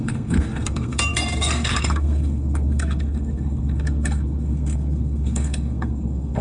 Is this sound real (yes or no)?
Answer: no